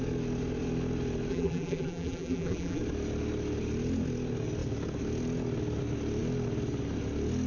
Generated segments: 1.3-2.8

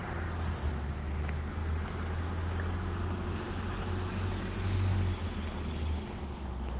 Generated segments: none

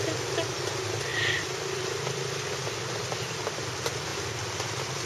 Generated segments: 1.1-3.4; 4.1-5.1